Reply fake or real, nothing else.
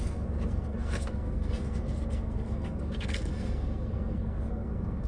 fake